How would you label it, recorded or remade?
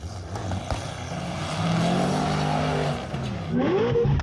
recorded